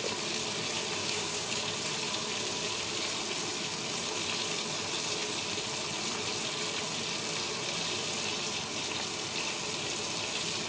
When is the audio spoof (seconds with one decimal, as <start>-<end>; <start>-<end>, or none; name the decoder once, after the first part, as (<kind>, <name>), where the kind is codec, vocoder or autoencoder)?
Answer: 1.0-1.6 (codec, DAC)